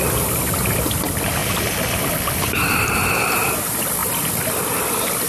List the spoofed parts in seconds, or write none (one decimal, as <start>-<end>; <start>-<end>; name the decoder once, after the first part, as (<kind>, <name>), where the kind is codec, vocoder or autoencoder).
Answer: none